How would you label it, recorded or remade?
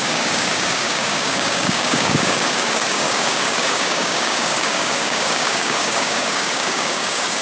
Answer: remade